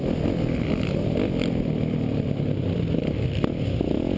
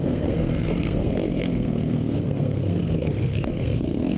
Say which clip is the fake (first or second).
second